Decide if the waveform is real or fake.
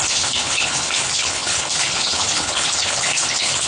fake